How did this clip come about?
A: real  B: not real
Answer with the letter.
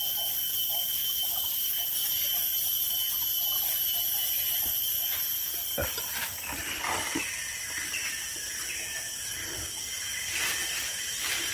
A